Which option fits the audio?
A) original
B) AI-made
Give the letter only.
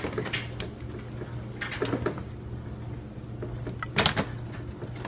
A